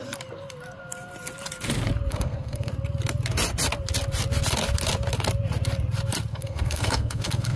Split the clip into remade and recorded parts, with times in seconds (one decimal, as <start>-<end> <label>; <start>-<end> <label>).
0.0-2.1 recorded; 2.1-2.7 remade; 2.7-6.3 recorded; 6.3-7.6 remade

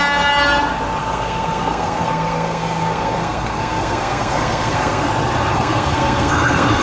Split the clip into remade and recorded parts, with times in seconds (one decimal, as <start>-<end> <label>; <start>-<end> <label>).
0.0-1.0 recorded; 1.0-5.1 remade; 5.1-5.5 recorded; 5.5-6.8 remade

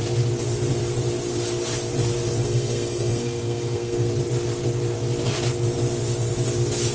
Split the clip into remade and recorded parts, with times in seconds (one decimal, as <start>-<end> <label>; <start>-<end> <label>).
0.0-2.4 recorded; 2.4-4.1 remade; 4.1-6.9 recorded

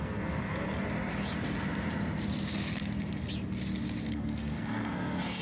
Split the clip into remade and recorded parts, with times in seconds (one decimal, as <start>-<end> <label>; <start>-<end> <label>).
0.0-0.8 remade; 0.8-4.0 recorded; 4.0-5.4 remade

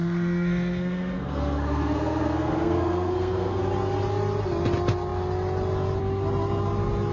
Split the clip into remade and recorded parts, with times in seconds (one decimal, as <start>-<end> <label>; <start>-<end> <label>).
0.0-3.6 remade; 3.6-7.1 recorded